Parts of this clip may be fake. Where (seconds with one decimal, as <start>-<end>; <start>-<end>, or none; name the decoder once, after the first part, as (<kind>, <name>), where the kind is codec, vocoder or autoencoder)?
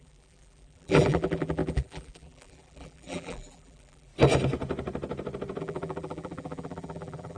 0.0-4.1 (vocoder, BigVGAN v2); 5.6-7.4